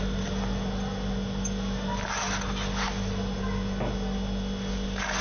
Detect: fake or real real